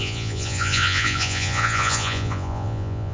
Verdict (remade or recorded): remade